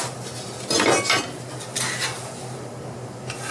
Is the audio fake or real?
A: real